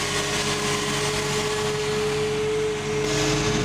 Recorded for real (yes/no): yes